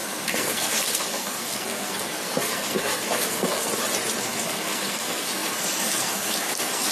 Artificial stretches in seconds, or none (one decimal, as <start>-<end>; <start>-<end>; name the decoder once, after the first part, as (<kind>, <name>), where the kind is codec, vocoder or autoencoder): 0.0-3.7 (codec, SNAC); 4.2-6.9